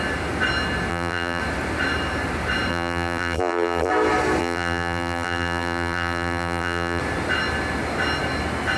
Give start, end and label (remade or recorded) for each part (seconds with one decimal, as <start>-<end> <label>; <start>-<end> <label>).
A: 0.0-0.9 recorded; 0.9-1.4 remade; 1.4-2.7 recorded; 2.7-3.9 remade; 3.9-4.4 recorded; 4.4-7.0 remade; 7.0-8.8 recorded